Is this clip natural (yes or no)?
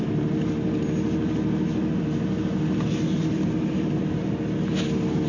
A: yes